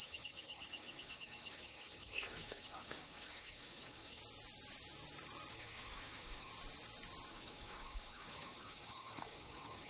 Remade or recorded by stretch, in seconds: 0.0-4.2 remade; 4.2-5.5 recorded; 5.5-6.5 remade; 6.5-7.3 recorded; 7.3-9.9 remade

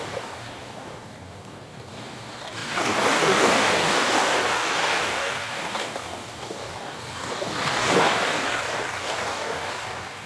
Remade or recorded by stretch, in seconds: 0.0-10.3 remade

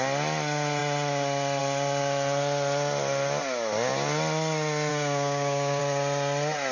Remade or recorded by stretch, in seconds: 0.0-4.9 recorded; 4.9-5.8 remade; 5.8-6.7 recorded